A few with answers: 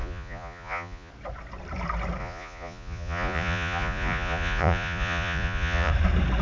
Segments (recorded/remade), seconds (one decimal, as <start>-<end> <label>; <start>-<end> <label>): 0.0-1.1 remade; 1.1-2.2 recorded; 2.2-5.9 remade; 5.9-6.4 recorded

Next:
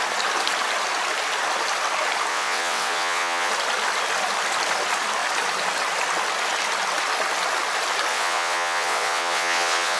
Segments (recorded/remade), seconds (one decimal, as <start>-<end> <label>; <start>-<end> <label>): 0.0-2.3 recorded; 2.3-3.5 remade; 3.5-8.1 recorded; 8.1-10.0 remade

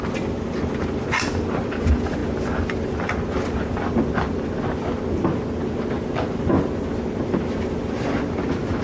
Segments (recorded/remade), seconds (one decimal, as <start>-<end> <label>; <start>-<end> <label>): 0.0-8.8 recorded

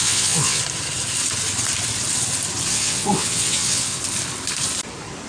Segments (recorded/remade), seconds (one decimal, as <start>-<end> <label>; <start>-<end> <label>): 0.0-0.6 remade; 0.6-2.7 recorded; 2.7-4.0 remade; 4.0-5.3 recorded

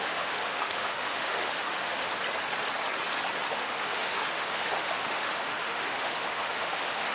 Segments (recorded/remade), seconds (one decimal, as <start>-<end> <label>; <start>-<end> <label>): 0.0-2.1 remade; 2.1-3.5 recorded; 3.5-7.1 remade